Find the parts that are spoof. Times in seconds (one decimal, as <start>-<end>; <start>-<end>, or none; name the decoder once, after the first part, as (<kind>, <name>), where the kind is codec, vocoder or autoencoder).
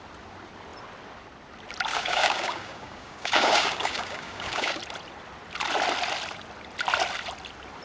1.9-4.8 (codec, DAC)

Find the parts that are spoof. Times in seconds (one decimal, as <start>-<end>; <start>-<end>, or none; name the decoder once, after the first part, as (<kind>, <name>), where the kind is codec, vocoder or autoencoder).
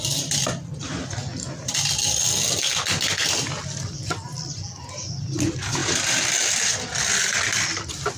none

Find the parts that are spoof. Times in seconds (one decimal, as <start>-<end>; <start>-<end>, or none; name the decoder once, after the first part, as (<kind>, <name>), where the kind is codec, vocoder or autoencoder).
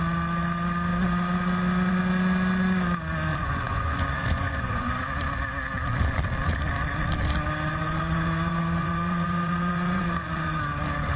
3.3-5.0 (vocoder, Vocos); 7.7-10.6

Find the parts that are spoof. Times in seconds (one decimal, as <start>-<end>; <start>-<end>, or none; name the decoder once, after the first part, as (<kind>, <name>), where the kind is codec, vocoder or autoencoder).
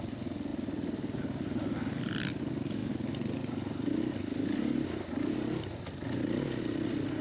none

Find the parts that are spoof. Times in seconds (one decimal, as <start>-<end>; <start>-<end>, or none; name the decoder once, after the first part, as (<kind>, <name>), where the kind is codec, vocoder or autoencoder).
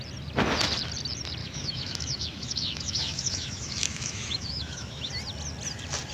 1.4-5.1 (autoencoder, DAC-VAE)